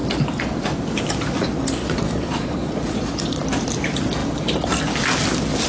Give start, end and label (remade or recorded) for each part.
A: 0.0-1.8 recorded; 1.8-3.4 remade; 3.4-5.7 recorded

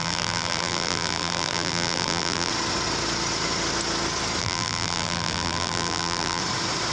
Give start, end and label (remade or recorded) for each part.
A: 0.0-2.5 remade; 2.5-4.4 recorded; 4.4-6.4 remade; 6.4-6.9 recorded

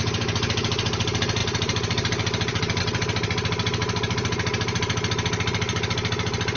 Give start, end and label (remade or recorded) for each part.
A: 0.0-1.4 recorded; 1.4-2.8 remade; 2.8-6.6 recorded

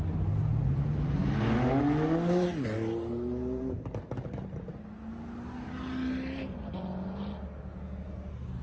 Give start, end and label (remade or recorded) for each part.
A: 0.0-8.6 recorded

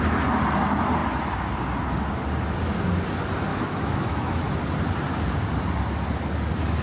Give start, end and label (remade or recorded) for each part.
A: 0.0-3.5 recorded; 3.5-4.5 remade; 4.5-6.8 recorded